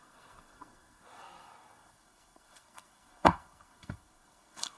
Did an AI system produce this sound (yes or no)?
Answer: yes